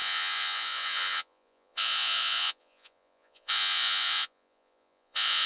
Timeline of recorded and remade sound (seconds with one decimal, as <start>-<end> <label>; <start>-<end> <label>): 0.0-5.5 remade